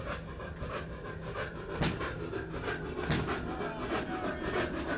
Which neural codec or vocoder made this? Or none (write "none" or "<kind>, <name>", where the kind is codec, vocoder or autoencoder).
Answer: none